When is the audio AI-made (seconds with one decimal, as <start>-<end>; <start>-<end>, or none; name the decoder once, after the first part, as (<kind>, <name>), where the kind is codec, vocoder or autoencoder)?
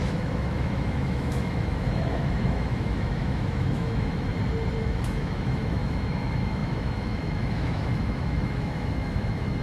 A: 0.0-4.3 (autoencoder, DAC-VAE); 4.8-9.6